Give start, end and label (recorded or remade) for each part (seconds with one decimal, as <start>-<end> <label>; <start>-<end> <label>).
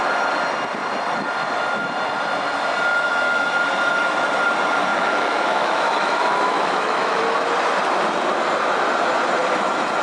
0.0-2.9 recorded; 2.9-3.5 remade; 3.5-4.9 recorded; 4.9-7.2 remade; 7.2-10.0 recorded